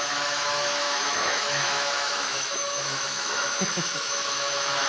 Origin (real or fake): fake